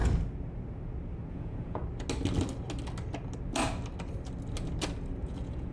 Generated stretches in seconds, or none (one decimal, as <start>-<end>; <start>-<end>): 1.3-1.8; 5.2-5.7